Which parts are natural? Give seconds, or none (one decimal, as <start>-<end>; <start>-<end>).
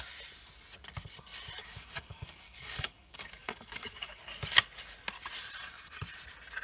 0.0-1.6; 4.2-6.6